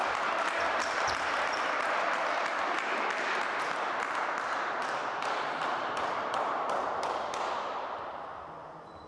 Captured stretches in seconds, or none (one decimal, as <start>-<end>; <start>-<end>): 3.6-5.6; 6.8-9.1